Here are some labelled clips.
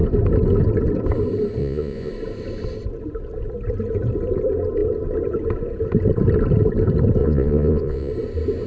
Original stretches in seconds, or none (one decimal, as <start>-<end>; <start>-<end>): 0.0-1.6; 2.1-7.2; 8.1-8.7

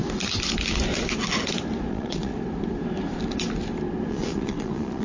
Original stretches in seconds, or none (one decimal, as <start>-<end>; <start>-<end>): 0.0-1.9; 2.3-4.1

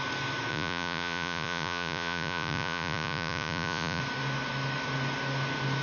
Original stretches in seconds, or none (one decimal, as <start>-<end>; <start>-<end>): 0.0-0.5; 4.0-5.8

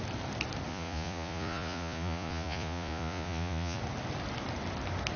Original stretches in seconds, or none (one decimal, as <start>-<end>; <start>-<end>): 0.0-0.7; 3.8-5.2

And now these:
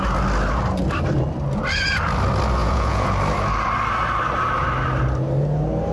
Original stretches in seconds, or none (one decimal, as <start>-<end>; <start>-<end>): 0.0-2.6; 3.1-5.9

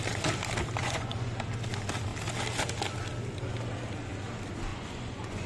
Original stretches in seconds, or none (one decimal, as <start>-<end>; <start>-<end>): 0.0-0.8; 1.3-4.7

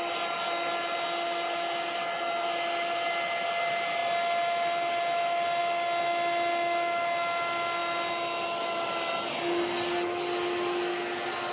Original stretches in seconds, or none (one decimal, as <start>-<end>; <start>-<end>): 0.0-11.5